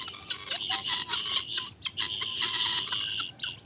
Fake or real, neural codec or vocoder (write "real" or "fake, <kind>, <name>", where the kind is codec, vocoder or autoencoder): real